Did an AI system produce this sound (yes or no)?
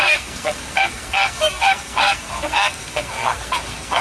yes